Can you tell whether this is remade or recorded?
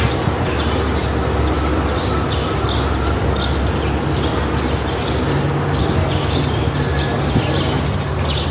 recorded